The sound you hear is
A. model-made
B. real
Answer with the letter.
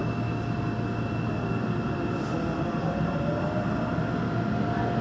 B